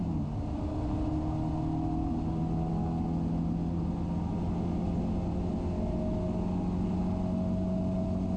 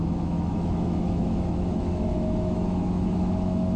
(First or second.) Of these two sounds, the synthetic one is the second